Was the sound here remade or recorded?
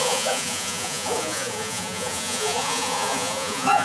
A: remade